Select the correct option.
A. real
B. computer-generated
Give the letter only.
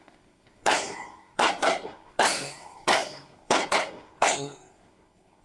B